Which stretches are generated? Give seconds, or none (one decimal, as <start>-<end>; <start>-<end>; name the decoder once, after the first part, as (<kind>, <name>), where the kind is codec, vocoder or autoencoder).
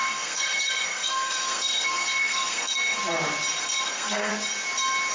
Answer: 0.0-3.0 (codec, SNAC); 3.6-4.3